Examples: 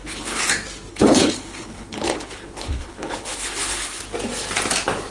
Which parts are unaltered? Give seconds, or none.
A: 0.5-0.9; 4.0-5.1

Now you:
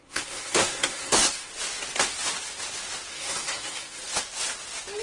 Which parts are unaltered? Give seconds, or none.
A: 1.5-3.1; 4.0-5.0

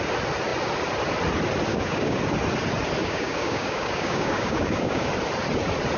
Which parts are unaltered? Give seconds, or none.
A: 0.0-1.7; 2.2-3.0; 5.1-6.0

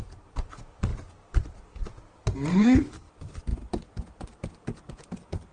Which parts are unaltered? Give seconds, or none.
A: 0.0-2.5; 3.1-5.5